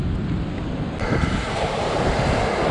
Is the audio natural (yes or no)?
yes